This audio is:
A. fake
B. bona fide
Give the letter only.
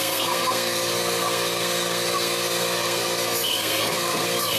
A